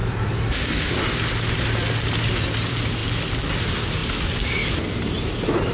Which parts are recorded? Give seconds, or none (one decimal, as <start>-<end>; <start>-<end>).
3.0-3.6; 4.0-5.7